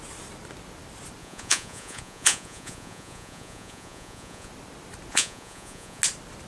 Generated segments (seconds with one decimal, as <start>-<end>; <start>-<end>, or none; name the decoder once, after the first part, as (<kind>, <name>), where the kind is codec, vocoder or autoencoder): 1.2-4.5 (vocoder, Vocos); 5.1-6.0